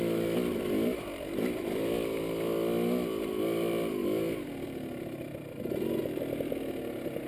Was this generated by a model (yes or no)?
no